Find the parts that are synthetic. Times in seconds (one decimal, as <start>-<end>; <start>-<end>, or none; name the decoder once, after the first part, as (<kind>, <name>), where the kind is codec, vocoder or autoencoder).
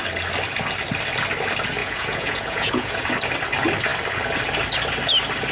1.8-3.0 (vocoder, Vocos)